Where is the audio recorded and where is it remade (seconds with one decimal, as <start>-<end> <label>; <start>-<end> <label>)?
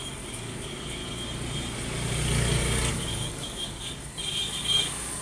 0.0-1.0 remade; 1.0-2.9 recorded; 2.9-5.2 remade